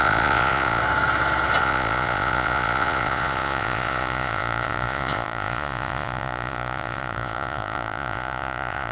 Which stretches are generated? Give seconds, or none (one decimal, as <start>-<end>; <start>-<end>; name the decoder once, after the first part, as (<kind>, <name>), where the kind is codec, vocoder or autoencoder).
0.0-0.8 (vocoder, Vocos); 1.6-8.9